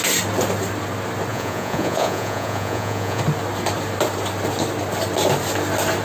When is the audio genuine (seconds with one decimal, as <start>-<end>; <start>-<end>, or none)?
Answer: 0.0-1.3; 3.2-6.0

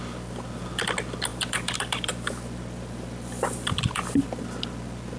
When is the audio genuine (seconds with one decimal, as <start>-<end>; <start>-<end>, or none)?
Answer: 0.0-1.3; 4.4-5.2

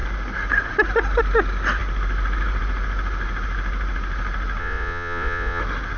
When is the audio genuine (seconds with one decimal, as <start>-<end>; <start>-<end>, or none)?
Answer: 0.0-4.6; 5.6-6.0